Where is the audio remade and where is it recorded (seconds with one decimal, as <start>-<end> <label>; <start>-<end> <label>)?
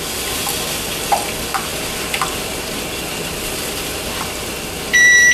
0.0-1.7 recorded; 1.7-5.3 remade